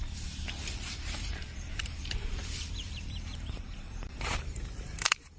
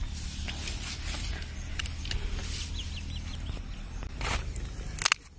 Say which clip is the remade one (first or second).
first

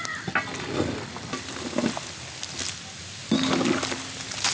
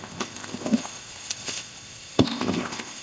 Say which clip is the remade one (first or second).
second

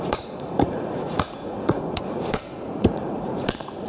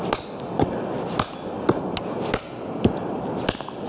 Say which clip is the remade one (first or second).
first